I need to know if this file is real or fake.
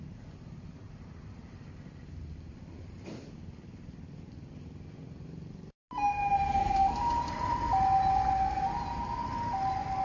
real